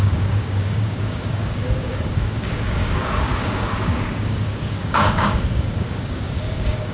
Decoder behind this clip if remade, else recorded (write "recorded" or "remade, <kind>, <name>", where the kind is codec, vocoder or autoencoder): remade, codec, DAC